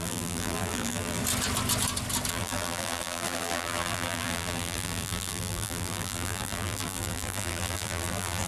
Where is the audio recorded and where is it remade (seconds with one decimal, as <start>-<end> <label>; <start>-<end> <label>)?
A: 0.0-1.2 remade; 1.2-2.3 recorded; 2.3-8.5 remade

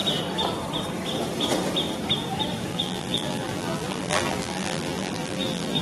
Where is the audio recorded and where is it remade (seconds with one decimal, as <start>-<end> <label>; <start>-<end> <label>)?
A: 0.0-2.7 recorded; 2.7-5.8 remade

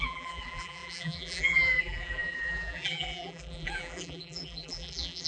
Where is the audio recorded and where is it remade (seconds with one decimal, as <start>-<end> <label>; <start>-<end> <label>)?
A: 0.0-5.3 remade

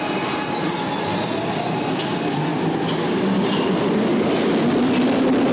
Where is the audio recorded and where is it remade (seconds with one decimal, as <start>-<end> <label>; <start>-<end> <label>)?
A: 0.0-2.5 recorded; 2.5-4.4 remade; 4.4-5.5 recorded

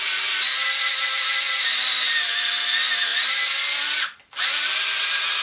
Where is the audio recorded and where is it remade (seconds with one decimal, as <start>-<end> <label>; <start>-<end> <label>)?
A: 0.0-0.6 recorded; 0.6-2.4 remade; 2.4-3.1 recorded; 3.1-4.4 remade; 4.4-5.4 recorded